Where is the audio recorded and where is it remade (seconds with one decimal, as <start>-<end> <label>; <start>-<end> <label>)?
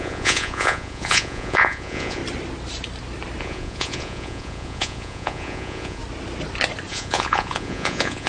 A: 0.0-2.2 remade; 2.2-3.4 recorded; 3.4-6.0 remade; 6.0-6.9 recorded; 6.9-8.3 remade